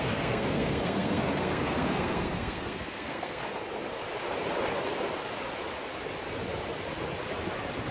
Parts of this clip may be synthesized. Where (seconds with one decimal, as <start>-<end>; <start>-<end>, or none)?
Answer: 0.0-3.4